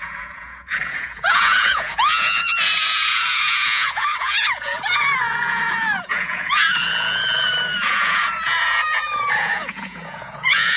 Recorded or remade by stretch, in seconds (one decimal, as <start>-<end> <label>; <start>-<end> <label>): 0.0-10.8 remade

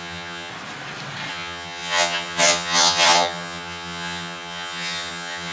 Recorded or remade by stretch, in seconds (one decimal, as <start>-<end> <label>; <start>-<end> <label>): 0.0-0.5 remade; 0.5-1.3 recorded; 1.3-5.5 remade

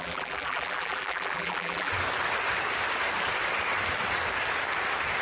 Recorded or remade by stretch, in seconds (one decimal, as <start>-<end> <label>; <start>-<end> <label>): 0.0-1.9 remade; 1.9-5.2 recorded

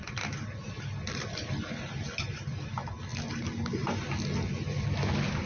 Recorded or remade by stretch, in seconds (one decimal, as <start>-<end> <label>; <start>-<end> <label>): 0.0-5.5 recorded

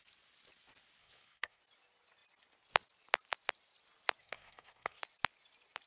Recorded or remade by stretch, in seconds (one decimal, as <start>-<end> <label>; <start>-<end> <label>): 0.0-1.0 recorded; 1.0-1.6 remade; 1.6-4.2 recorded; 4.2-5.0 remade; 5.0-5.9 recorded

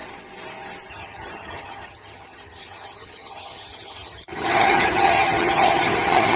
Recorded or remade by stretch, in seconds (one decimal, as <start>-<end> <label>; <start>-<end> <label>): 0.0-0.9 recorded; 0.9-6.4 remade

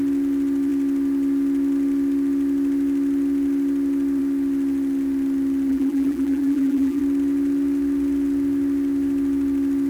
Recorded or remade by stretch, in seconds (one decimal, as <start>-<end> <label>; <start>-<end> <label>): 0.0-5.7 recorded; 5.7-7.0 remade; 7.0-9.9 recorded

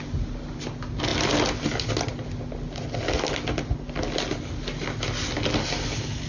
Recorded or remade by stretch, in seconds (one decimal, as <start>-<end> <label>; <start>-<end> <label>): 0.0-6.3 recorded